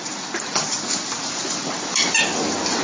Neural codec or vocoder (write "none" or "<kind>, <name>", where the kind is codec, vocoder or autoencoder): none